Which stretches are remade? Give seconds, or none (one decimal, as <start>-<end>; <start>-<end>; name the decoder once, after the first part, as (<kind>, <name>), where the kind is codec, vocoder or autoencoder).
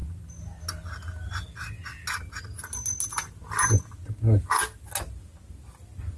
none